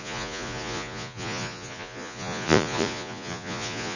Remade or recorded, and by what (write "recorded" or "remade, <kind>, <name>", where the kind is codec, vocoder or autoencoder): remade, vocoder, Vocos